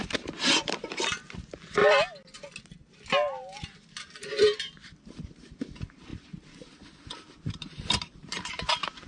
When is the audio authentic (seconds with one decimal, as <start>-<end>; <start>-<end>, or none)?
1.8-3.6